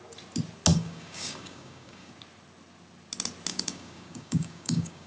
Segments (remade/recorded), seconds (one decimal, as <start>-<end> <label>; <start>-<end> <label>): 0.0-0.7 recorded; 0.7-2.1 remade; 2.1-3.5 recorded; 3.5-5.1 remade

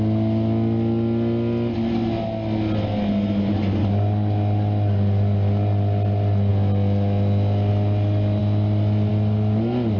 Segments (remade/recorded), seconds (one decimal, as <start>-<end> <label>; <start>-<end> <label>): 0.0-10.0 recorded

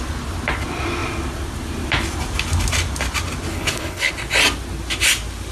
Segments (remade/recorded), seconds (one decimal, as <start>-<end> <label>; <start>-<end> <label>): 0.0-3.5 recorded; 3.5-4.1 remade; 4.1-5.5 recorded

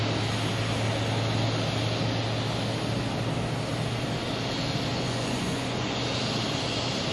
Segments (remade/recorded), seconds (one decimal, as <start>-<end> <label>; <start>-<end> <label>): 0.0-4.9 recorded; 4.9-6.0 remade; 6.0-7.1 recorded

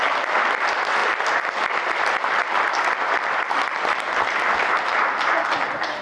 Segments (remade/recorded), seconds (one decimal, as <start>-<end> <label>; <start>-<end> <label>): 0.0-1.0 recorded; 1.0-4.6 remade; 4.6-6.0 recorded